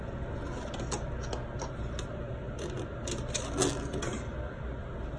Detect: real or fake real